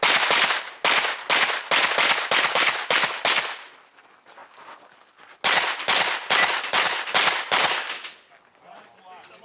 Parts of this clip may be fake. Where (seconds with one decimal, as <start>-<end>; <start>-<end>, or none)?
none